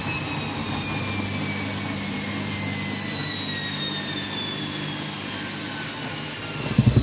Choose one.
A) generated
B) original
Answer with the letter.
B